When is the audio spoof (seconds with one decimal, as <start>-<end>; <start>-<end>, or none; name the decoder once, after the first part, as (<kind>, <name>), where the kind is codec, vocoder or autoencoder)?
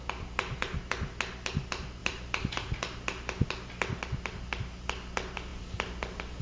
2.0-3.5 (vocoder, BigVGAN v2); 5.5-6.4